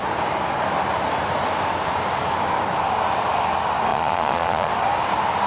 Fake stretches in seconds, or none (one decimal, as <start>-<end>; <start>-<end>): 3.9-4.7